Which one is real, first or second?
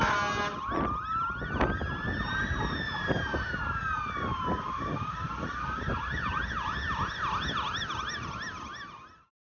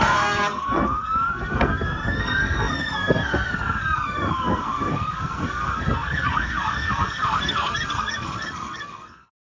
first